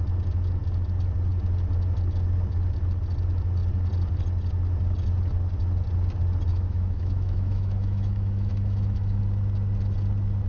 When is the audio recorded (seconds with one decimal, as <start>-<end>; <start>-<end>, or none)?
0.0-6.5; 9.2-10.5